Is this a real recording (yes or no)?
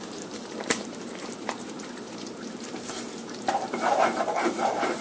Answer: no